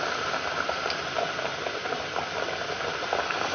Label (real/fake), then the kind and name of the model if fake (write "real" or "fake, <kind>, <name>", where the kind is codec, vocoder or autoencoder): real